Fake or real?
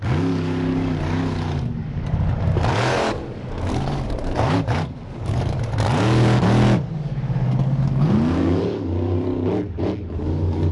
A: fake